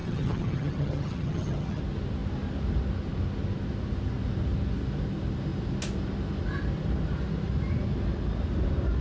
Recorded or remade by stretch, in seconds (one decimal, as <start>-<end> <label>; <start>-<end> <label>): 0.0-1.8 remade; 1.8-9.0 recorded